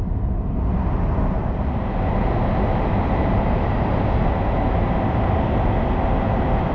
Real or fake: real